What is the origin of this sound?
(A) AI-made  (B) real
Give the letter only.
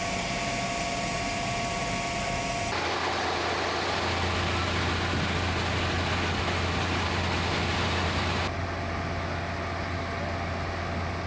B